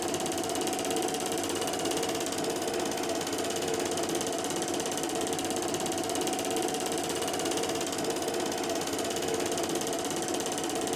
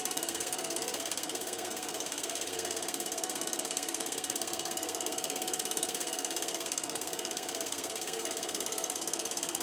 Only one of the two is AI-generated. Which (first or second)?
second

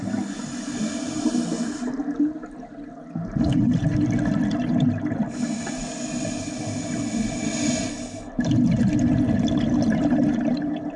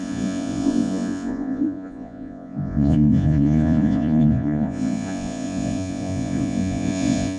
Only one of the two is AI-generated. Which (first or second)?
second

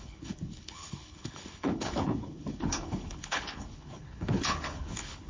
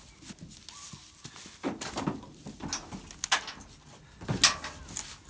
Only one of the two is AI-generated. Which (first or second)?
first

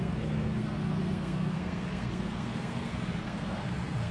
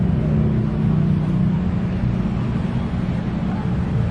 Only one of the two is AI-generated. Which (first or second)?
first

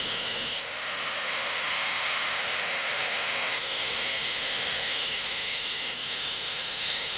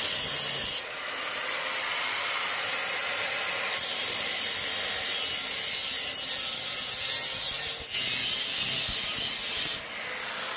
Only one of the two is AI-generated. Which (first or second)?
first